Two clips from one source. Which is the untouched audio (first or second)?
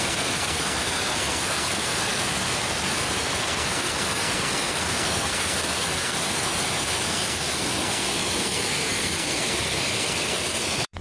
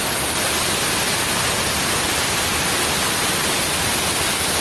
second